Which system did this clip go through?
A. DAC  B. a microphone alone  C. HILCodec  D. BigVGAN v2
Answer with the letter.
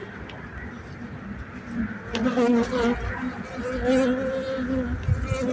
B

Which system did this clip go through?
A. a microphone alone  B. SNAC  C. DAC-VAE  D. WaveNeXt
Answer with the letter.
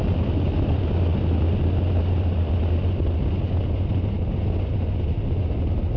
A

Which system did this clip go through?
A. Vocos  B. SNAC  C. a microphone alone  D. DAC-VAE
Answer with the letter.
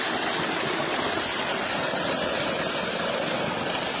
C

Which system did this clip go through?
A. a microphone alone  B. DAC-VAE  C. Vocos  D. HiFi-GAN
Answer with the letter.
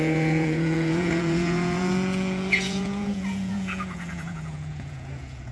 C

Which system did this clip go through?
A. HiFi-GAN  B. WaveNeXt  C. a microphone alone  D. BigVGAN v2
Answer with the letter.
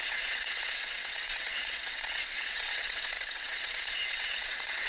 B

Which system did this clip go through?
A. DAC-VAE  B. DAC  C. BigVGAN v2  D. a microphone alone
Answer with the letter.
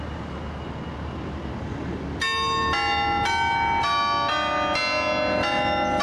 D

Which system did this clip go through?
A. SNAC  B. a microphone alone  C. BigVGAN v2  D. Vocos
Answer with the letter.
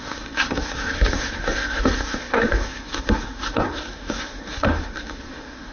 A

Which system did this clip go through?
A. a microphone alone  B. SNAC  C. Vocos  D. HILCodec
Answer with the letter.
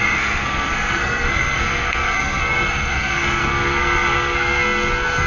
B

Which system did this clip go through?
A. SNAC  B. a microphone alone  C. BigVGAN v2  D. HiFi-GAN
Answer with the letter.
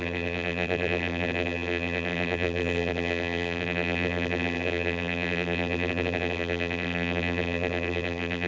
C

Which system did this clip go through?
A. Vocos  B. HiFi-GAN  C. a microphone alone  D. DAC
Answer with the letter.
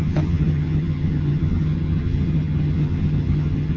B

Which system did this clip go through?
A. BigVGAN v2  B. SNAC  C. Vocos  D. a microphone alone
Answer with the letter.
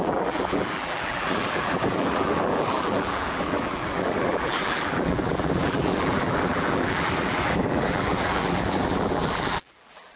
A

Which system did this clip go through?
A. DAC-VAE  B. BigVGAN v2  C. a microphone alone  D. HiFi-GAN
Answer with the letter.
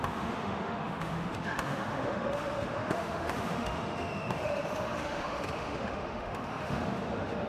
A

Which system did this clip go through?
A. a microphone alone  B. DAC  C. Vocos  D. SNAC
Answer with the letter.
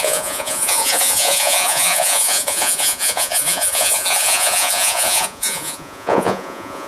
C